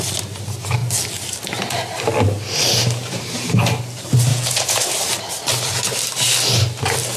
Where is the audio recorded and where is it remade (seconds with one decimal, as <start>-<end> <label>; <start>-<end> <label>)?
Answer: 0.0-4.3 recorded; 4.3-4.8 remade; 4.8-7.2 recorded